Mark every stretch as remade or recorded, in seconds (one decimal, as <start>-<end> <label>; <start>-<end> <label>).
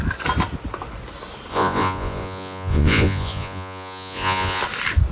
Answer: 0.0-1.5 recorded; 1.5-4.6 remade; 4.6-5.1 recorded